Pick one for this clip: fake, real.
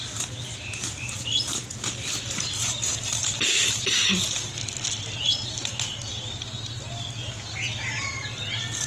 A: real